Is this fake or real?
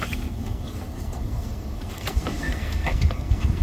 fake